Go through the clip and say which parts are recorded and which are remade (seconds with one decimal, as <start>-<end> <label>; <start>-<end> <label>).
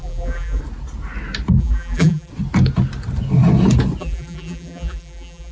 0.0-0.6 remade; 0.6-1.6 recorded; 1.6-2.3 remade; 2.3-4.0 recorded; 4.0-5.5 remade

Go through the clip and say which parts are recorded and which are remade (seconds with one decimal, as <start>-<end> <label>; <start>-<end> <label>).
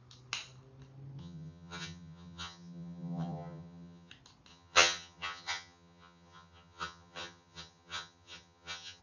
0.0-1.2 recorded; 1.2-4.1 remade; 4.1-4.5 recorded; 4.5-9.0 remade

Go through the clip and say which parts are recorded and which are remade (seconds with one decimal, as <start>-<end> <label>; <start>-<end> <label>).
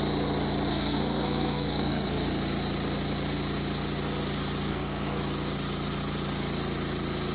0.0-0.7 recorded; 0.7-2.3 remade; 2.3-4.7 recorded; 4.7-5.2 remade; 5.2-7.3 recorded